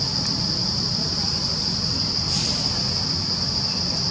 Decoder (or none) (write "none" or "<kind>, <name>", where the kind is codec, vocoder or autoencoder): none